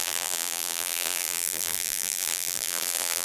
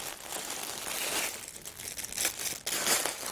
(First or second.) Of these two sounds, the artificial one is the first